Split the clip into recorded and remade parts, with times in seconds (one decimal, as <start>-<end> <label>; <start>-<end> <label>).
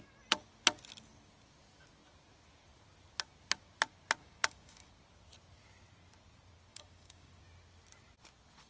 0.0-4.2 recorded; 4.2-4.9 remade; 4.9-6.7 recorded; 6.7-7.4 remade; 7.4-8.7 recorded